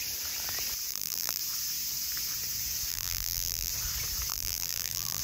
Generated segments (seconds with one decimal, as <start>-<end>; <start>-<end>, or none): 0.9-1.4; 2.9-3.7; 4.3-5.2